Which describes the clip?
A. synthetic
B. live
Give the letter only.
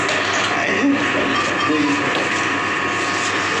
B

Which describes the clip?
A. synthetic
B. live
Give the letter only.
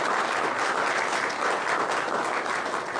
B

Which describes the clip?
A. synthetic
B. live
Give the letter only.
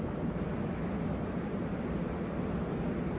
B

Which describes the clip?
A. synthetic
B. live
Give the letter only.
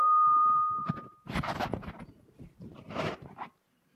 A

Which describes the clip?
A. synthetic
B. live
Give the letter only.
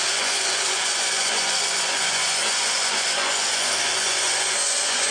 A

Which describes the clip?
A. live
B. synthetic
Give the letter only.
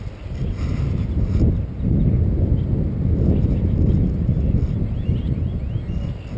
A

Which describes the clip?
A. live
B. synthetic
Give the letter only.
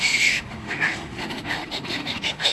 B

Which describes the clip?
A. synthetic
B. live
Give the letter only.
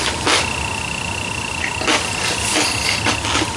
B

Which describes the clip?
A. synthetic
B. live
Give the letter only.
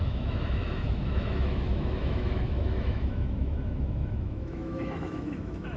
A